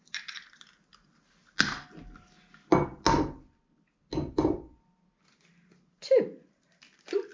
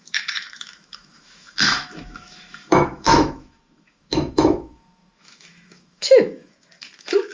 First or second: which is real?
first